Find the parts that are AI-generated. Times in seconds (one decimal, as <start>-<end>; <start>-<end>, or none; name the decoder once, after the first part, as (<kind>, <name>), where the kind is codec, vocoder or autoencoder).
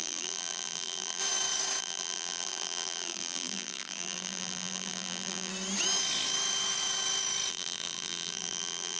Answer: 0.0-1.2 (vocoder, BigVGAN v2); 1.8-5.5; 7.5-9.0